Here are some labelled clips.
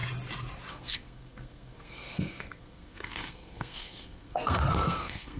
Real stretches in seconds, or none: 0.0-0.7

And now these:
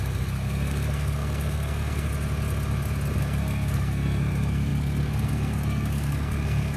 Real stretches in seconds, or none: 2.1-3.2

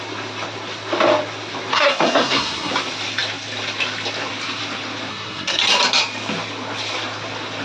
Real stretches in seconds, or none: 0.0-1.7; 2.7-5.1; 5.6-7.6

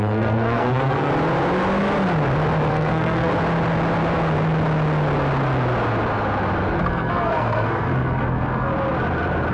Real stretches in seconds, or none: 1.1-2.7; 3.3-6.8; 8.7-9.5

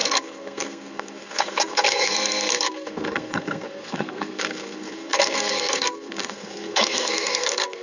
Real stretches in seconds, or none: none

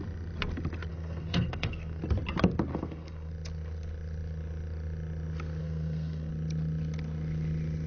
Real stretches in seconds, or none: 0.0-0.9; 2.0-2.7; 3.3-5.6; 6.3-7.9

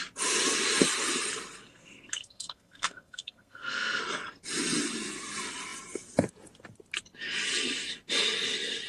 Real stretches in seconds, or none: 0.0-1.7; 4.0-8.9

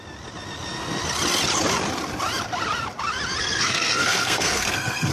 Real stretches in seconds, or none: 0.0-3.4